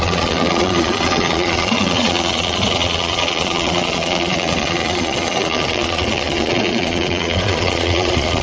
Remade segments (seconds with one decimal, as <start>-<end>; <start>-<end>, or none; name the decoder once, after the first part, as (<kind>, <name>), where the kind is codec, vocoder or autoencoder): 0.0-8.4 (vocoder, Vocos)